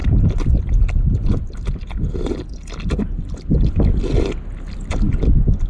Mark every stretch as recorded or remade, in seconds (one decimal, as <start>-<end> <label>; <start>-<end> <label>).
0.0-5.7 recorded